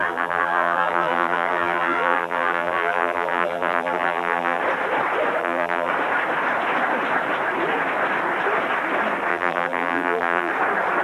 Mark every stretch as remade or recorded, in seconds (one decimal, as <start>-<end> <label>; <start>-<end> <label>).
0.0-4.6 remade; 4.6-5.4 recorded; 5.4-5.9 remade; 5.9-9.3 recorded; 9.3-10.5 remade; 10.5-11.0 recorded